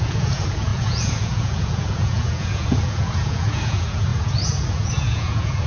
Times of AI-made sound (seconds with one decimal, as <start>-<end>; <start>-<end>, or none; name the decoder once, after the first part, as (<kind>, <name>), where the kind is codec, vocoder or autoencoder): 0.0-5.7 (vocoder, Vocos)